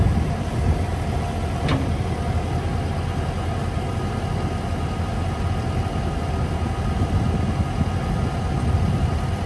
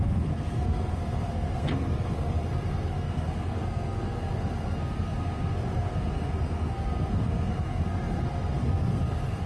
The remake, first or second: second